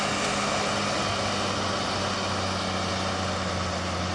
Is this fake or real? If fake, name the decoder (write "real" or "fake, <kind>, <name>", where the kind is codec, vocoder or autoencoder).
real